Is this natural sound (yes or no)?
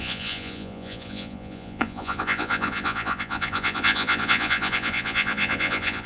no